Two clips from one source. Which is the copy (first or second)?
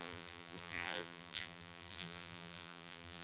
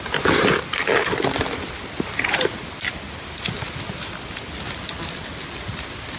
first